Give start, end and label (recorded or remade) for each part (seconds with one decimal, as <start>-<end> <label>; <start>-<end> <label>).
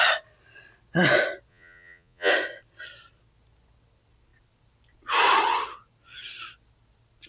0.0-1.5 recorded; 1.5-2.3 remade; 2.3-7.3 recorded